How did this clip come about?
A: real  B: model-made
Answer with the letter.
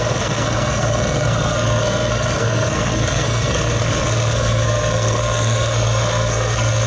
B